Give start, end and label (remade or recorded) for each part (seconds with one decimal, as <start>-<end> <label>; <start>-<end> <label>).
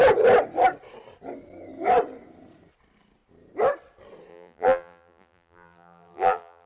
0.0-4.3 recorded; 4.3-6.7 remade